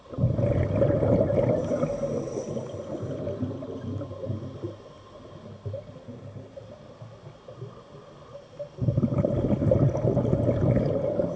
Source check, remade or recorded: recorded